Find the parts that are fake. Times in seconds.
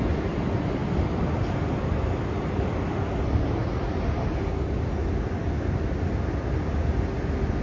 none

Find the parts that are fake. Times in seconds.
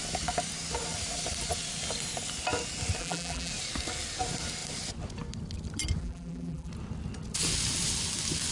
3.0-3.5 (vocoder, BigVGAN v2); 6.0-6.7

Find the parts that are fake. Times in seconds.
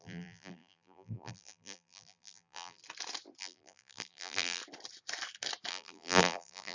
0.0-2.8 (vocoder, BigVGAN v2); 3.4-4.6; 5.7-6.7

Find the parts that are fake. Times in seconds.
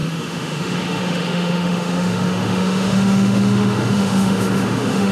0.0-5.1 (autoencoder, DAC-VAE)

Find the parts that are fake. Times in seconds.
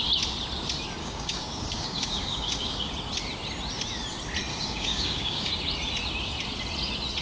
1.0-2.9 (codec, DAC); 4.5-5.5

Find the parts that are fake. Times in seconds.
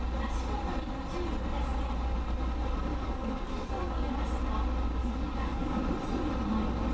2.9-4.1 (codec, DAC); 5.0-5.8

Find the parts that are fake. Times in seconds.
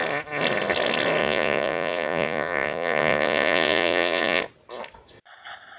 1.2-4.4 (vocoder, Vocos)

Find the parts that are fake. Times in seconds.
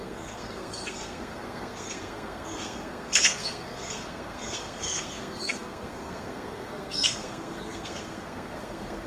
0.0-9.1 (codec, SNAC)